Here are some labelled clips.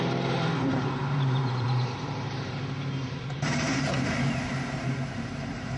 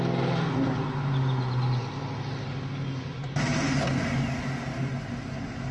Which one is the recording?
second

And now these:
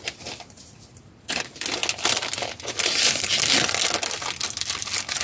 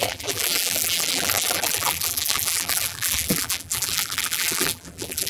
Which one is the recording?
first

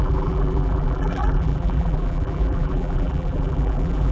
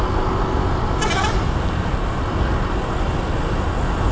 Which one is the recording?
second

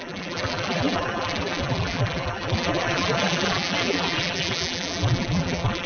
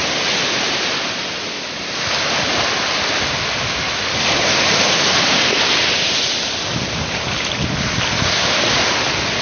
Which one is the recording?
second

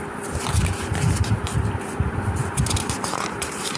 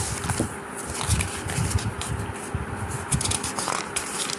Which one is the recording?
second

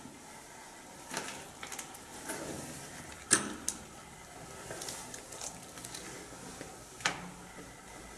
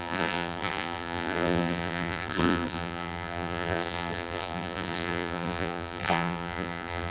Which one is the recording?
first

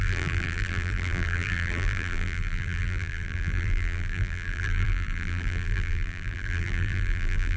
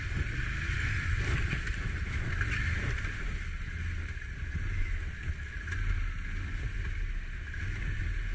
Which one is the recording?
second